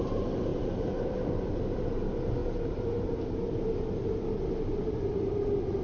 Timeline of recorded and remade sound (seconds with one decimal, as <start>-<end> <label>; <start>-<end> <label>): 0.0-0.5 recorded; 0.5-1.6 remade; 1.6-2.4 recorded; 2.4-3.1 remade; 3.1-5.8 recorded